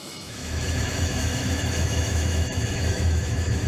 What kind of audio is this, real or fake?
fake